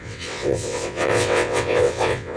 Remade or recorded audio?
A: remade